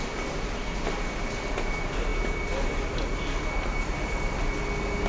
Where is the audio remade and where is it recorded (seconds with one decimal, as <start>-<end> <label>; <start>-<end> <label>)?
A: 0.0-5.1 recorded